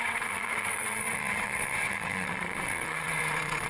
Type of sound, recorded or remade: remade